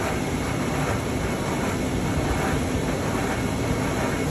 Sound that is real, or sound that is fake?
real